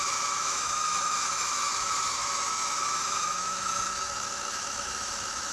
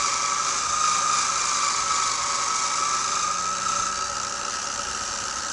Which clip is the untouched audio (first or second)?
second